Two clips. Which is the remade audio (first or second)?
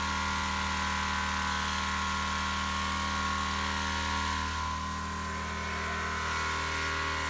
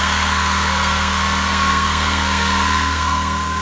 second